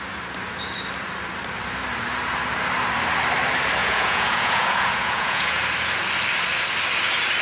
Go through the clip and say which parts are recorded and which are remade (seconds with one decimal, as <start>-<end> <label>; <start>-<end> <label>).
0.0-3.8 recorded; 3.8-5.6 remade; 5.6-7.4 recorded